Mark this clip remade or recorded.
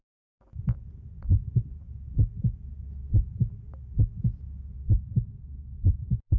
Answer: recorded